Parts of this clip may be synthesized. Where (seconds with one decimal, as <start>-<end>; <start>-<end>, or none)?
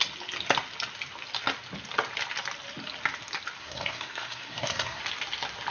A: 3.6-5.0